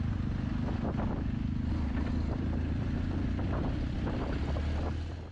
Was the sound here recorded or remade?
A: recorded